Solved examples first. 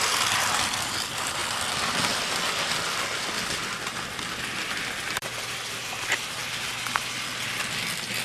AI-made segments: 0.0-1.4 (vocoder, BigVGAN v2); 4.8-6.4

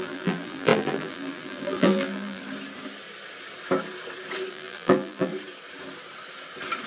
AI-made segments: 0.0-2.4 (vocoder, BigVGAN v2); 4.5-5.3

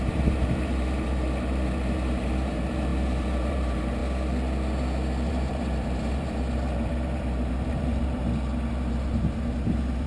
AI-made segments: 0.0-4.0 (vocoder, BigVGAN v2); 5.3-8.2; 8.7-10.1